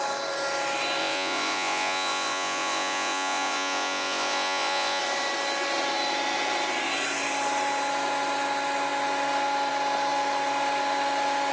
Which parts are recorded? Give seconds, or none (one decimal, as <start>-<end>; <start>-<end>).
0.0-1.0; 5.0-11.5